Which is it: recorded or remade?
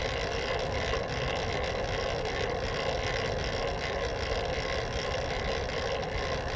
recorded